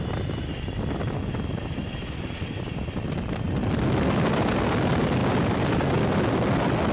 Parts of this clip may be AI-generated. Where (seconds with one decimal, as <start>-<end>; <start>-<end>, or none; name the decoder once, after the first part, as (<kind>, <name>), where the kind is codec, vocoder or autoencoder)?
none